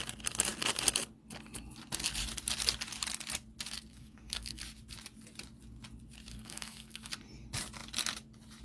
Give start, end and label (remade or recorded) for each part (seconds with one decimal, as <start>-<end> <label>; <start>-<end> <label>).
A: 0.0-3.9 recorded; 3.9-4.6 remade; 4.6-6.3 recorded; 6.3-7.1 remade; 7.1-8.6 recorded